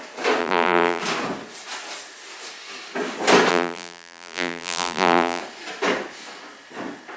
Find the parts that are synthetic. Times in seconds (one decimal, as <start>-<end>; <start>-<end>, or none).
0.4-1.0; 3.5-5.4